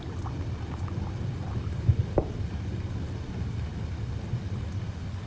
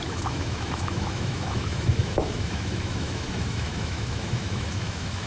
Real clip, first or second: first